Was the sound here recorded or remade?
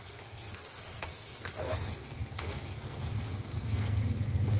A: remade